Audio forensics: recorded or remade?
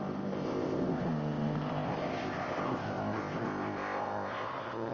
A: remade